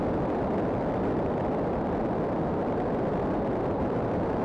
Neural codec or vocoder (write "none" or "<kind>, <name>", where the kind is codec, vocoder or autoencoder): vocoder, BigVGAN v2